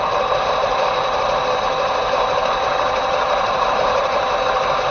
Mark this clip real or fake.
fake